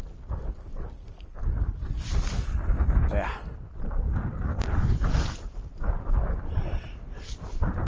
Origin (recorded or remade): recorded